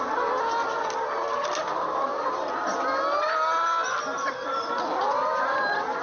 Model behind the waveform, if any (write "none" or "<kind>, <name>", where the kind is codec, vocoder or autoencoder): none